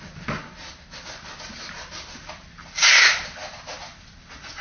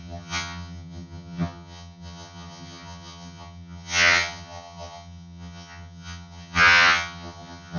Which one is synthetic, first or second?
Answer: second